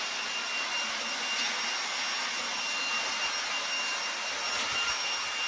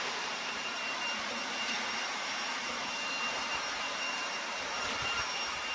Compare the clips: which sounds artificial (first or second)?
second